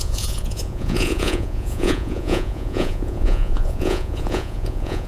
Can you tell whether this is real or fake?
fake